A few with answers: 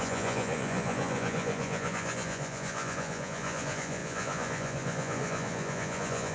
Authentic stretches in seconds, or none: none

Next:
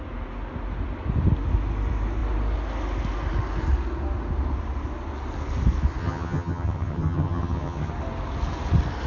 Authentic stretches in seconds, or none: 0.0-6.0; 7.9-9.1

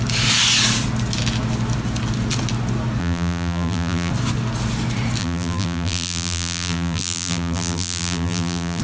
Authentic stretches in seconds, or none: 0.0-3.0; 4.1-5.2